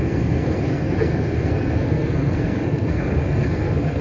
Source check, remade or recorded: remade